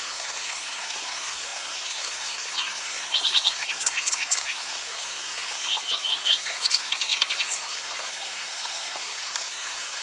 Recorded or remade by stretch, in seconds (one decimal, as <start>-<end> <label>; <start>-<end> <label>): 0.0-10.0 remade